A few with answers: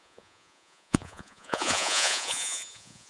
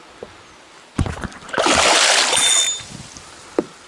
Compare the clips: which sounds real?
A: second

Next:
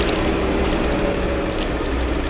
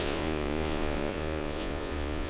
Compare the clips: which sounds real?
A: first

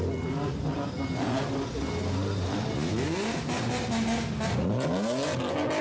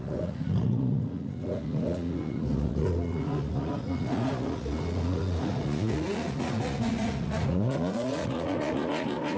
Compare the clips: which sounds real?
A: first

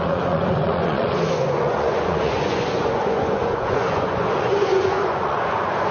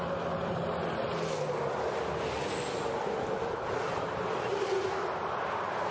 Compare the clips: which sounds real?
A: second